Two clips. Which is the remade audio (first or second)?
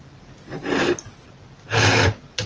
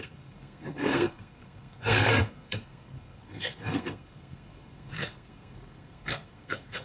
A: second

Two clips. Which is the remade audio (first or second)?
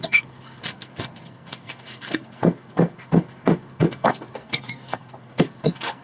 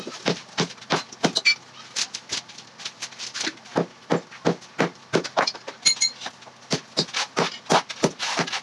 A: first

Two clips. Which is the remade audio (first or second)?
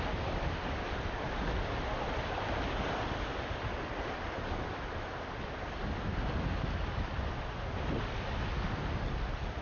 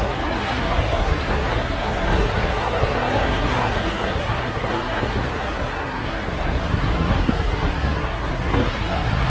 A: second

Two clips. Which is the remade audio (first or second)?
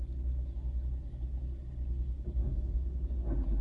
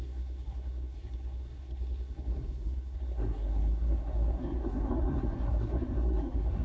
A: second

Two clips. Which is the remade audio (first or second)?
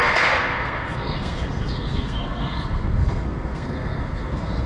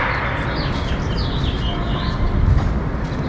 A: first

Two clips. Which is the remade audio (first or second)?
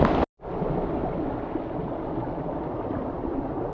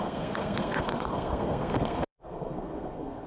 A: second